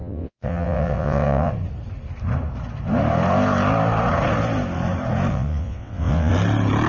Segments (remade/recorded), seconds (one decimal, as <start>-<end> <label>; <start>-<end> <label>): 0.0-1.5 remade; 1.5-5.3 recorded; 5.3-6.3 remade; 6.3-6.9 recorded